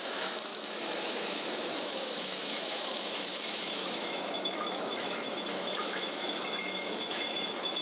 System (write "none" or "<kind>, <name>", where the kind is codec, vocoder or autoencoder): autoencoder, DAC-VAE